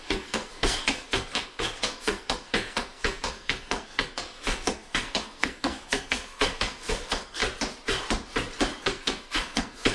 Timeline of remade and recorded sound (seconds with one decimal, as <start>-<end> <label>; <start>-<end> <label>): 0.0-7.4 remade; 7.4-8.8 recorded; 8.8-9.9 remade